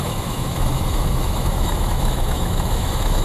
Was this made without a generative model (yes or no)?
no